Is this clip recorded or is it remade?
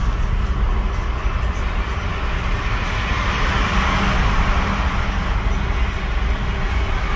recorded